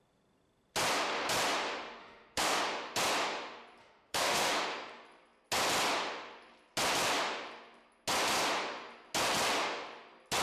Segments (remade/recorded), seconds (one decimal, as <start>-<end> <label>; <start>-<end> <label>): 0.0-2.0 recorded; 2.0-2.6 remade; 2.6-3.8 recorded; 3.8-4.5 remade; 4.5-10.4 recorded